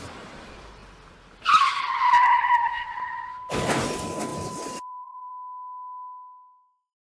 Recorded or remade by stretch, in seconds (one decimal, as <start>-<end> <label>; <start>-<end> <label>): 0.0-0.8 recorded; 0.8-1.7 remade; 1.7-4.3 recorded; 4.3-5.3 remade; 5.3-7.2 recorded